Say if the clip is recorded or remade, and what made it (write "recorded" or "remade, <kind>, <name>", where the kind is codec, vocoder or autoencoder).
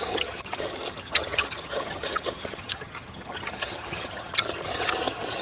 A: remade, vocoder, HiFi-GAN